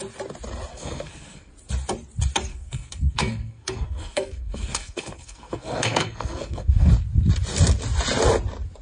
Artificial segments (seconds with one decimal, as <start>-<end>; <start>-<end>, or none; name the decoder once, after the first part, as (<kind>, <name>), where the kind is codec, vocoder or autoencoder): 0.7-1.5 (codec, SNAC); 2.5-6.9